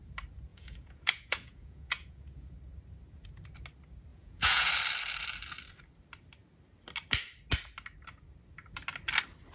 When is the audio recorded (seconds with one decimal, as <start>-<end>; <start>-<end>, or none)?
0.0-0.5; 2.5-4.1; 4.7-9.5